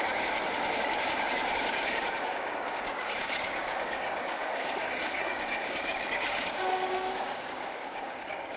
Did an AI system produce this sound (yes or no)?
yes